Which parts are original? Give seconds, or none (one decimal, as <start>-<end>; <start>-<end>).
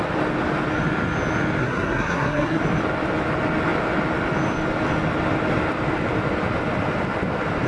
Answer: 0.0-1.6; 2.6-7.7